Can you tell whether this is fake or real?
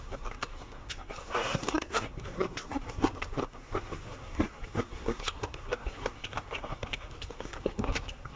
fake